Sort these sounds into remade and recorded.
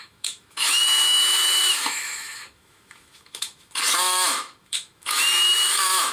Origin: remade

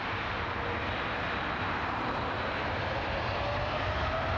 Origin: recorded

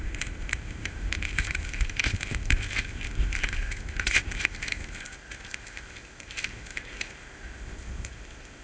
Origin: remade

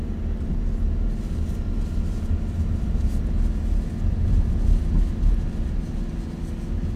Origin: recorded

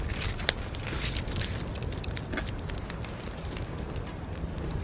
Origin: recorded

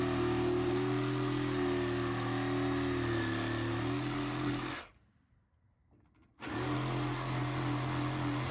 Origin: recorded